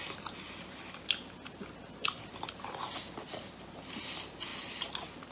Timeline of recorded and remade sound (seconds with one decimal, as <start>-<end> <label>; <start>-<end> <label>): 0.0-5.3 recorded